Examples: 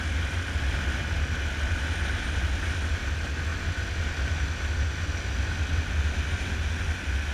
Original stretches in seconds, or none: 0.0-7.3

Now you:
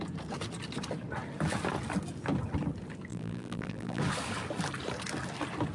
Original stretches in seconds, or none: 0.0-3.1; 4.0-5.7

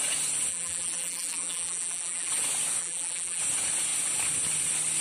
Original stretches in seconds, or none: 0.0-0.5; 2.3-2.8; 3.4-5.0

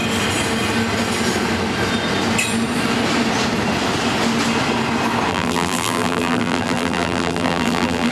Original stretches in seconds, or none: 0.0-5.3